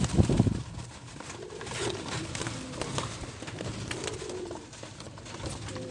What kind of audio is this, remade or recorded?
recorded